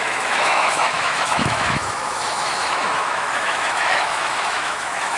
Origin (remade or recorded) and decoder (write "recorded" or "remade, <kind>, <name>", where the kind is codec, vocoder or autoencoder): remade, autoencoder, DAC-VAE